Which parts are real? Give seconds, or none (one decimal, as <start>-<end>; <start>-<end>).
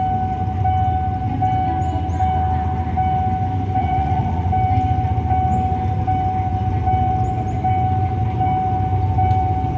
0.0-3.8; 4.5-9.8